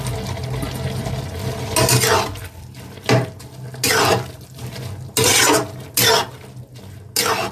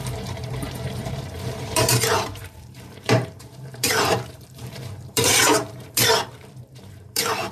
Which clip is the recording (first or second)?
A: first